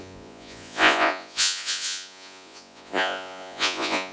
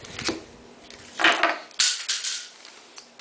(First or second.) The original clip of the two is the second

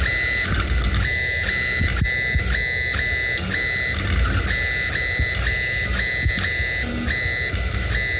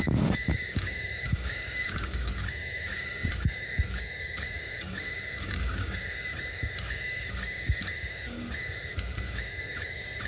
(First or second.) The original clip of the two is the first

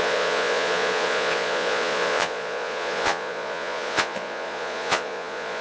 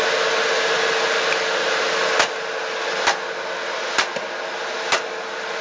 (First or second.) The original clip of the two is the second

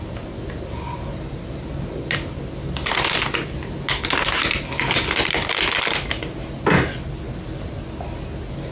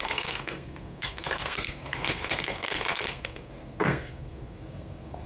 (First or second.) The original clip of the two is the first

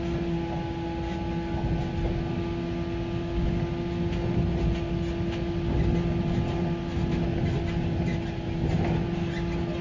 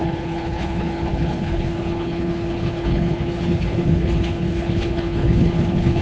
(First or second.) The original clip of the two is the first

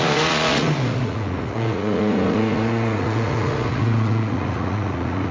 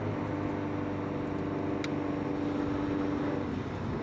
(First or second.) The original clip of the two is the second